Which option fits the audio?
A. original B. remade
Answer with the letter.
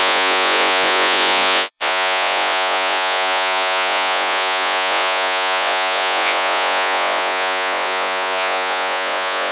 B